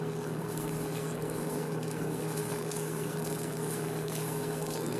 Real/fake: fake